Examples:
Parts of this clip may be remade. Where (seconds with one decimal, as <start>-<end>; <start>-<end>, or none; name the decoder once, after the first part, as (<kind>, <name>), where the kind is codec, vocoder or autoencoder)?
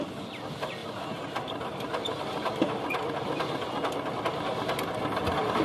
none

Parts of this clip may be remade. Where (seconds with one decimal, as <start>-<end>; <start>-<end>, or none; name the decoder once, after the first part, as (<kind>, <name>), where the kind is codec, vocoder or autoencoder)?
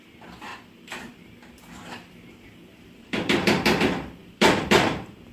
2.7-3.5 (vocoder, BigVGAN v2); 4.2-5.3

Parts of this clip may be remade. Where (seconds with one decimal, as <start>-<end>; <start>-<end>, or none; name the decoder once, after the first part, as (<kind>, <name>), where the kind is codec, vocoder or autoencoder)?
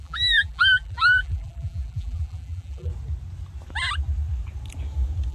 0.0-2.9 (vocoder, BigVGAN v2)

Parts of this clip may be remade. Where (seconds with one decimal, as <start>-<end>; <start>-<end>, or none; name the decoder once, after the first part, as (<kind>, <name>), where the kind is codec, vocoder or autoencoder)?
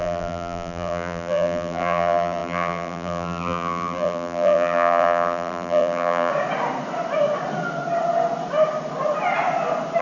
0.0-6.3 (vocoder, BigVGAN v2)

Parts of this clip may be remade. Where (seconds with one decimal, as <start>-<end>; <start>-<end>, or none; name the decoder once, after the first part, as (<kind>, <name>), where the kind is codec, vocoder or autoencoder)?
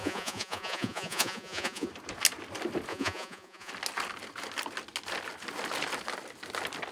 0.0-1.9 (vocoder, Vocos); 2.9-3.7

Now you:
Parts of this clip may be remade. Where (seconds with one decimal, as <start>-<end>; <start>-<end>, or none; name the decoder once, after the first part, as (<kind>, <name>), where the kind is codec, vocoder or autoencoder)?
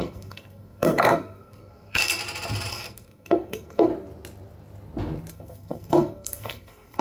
0.0-2.2 (codec, SNAC); 2.7-3.9; 5.3-7.0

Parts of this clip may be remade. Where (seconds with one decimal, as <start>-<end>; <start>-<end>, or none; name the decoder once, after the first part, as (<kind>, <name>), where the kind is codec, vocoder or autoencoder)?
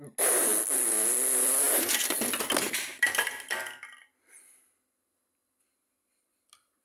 2.9-3.5 (vocoder, BigVGAN v2)